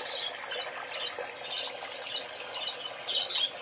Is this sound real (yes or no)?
yes